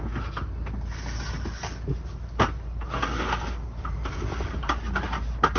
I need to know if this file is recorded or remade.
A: recorded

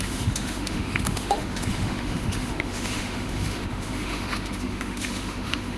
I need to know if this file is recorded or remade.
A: remade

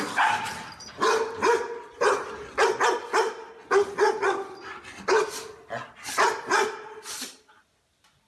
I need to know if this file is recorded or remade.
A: recorded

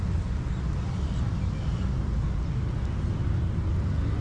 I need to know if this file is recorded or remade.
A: recorded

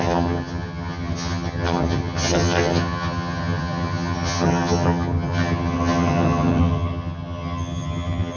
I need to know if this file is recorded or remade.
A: remade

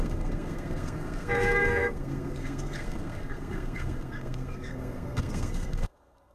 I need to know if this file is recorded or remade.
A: remade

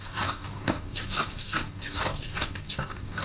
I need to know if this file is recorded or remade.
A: remade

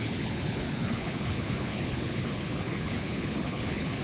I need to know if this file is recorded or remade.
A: remade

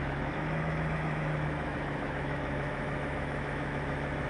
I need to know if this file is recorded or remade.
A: remade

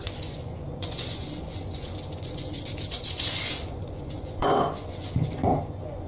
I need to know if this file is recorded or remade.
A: remade